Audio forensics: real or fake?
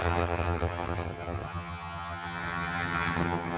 fake